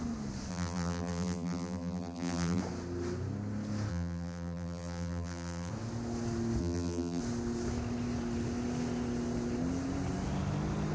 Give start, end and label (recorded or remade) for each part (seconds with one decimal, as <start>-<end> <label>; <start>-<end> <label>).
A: 0.0-0.5 recorded; 0.5-2.6 remade; 2.6-3.9 recorded; 3.9-5.7 remade; 5.7-6.6 recorded; 6.6-7.2 remade; 7.2-10.9 recorded